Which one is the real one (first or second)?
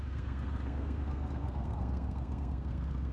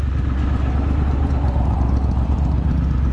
second